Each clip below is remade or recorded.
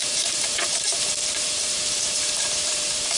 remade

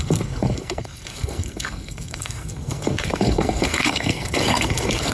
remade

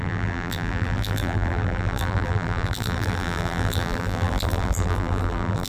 remade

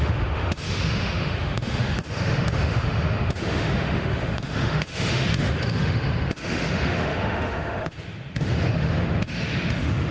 remade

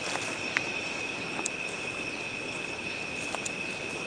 recorded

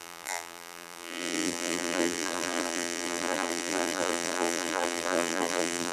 remade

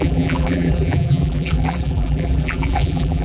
remade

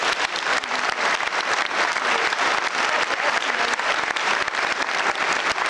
recorded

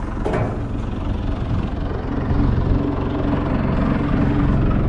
recorded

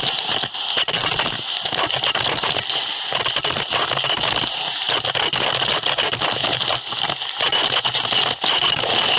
recorded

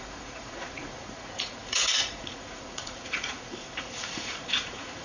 remade